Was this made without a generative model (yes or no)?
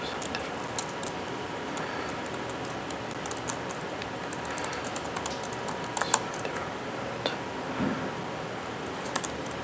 yes